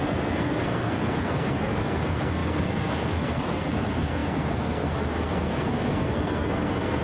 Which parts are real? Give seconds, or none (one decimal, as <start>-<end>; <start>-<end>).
none